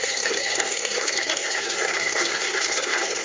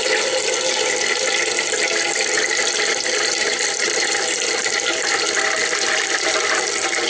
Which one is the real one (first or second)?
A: second